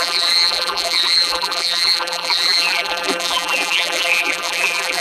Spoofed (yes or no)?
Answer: yes